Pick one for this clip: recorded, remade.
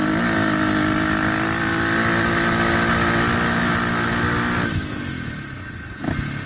recorded